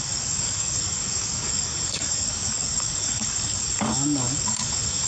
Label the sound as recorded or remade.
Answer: remade